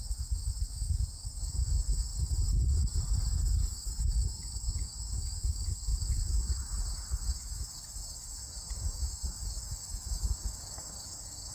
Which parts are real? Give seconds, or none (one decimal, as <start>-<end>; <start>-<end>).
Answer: 2.1-3.7